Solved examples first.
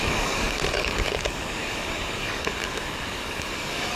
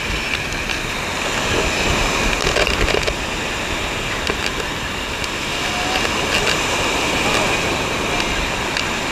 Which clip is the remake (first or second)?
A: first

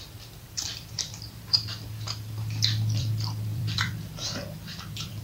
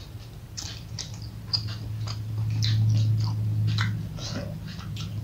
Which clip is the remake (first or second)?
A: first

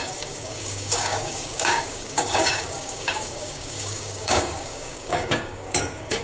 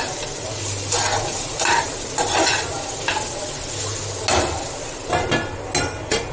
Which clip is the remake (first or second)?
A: first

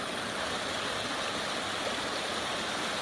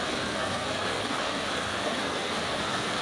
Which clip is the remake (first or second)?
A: second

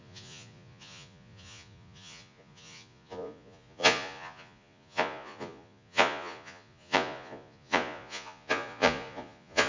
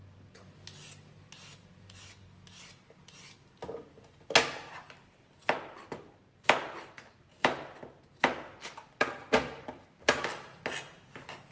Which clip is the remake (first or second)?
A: first